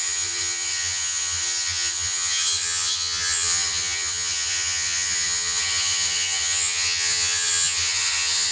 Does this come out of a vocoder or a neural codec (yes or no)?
yes